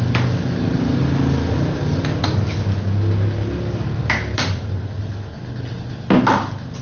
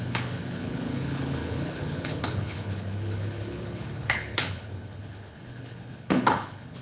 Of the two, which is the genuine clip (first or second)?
first